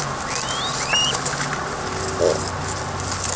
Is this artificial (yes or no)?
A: no